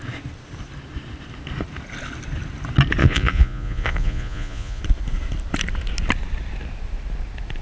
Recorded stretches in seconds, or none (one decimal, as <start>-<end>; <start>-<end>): 0.0-3.0; 4.8-7.6